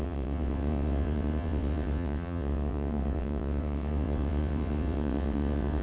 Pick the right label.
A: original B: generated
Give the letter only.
B